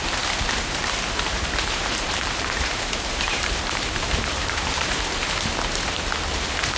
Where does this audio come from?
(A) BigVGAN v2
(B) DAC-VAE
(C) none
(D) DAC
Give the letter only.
A